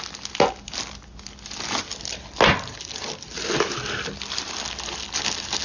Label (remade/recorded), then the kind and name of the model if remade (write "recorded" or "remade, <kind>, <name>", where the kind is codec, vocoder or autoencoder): recorded